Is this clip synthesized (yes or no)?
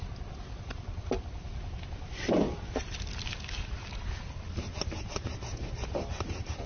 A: no